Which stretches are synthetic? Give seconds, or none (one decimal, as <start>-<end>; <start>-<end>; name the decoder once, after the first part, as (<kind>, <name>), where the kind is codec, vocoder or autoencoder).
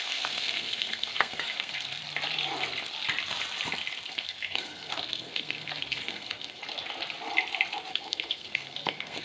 0.0-2.0 (codec, SNAC); 4.1-6.6; 7.9-9.2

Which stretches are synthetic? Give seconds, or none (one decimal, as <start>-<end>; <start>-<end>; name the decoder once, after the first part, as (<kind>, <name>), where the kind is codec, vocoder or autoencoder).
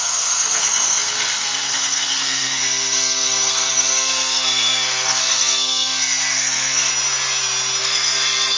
0.0-6.9 (codec, SNAC); 7.8-8.6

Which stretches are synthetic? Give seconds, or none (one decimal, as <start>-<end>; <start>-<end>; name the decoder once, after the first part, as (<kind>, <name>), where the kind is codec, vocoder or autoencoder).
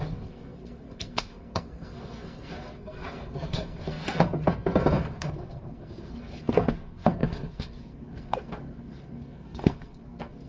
0.0-10.5 (codec, SNAC)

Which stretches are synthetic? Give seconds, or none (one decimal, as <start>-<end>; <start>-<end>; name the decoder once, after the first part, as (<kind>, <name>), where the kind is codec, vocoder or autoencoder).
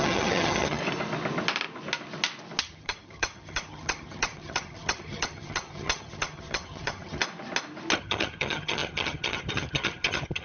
0.0-0.8 (vocoder, HiFi-GAN); 2.6-7.2; 8.0-10.4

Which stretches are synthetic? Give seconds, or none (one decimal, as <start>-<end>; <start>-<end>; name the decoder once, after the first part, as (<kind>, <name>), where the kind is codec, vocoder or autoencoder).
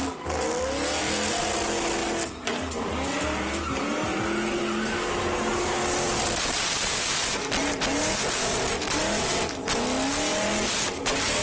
none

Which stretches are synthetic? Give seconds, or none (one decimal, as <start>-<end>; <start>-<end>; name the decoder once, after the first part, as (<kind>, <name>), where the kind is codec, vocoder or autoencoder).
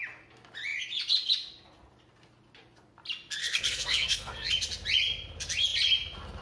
3.4-4.5 (codec, SNAC)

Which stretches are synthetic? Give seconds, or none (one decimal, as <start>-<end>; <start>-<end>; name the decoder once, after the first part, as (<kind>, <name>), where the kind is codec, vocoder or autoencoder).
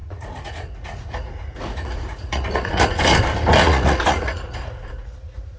0.0-3.0 (vocoder, Vocos); 3.6-5.6